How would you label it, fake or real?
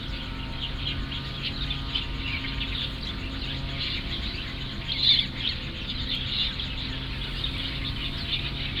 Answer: real